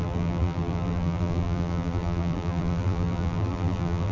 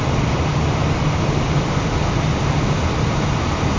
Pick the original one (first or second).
second